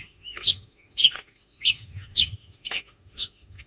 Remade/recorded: remade